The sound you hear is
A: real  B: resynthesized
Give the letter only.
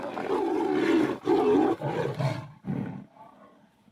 A